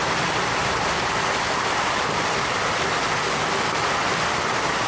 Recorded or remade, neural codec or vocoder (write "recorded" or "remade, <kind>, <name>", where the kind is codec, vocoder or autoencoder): recorded